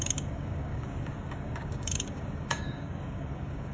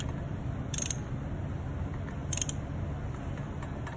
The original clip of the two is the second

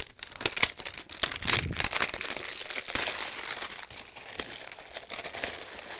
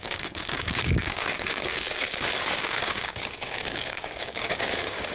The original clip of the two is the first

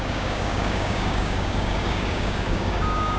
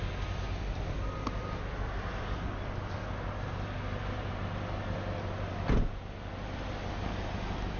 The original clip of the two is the second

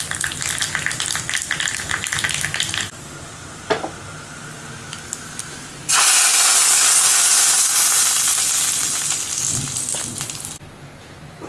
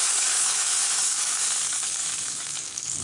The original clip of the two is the first